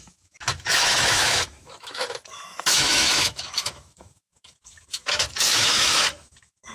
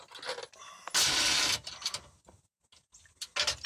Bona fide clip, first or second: second